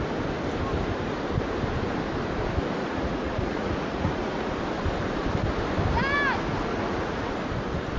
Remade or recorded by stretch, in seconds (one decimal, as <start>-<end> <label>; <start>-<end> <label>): 0.0-2.8 recorded; 2.8-4.5 remade; 4.5-6.7 recorded; 6.7-7.3 remade; 7.3-8.0 recorded